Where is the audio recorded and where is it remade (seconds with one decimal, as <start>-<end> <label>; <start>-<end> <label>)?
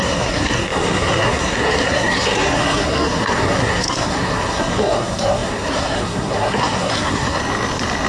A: 0.0-7.4 remade; 7.4-8.1 recorded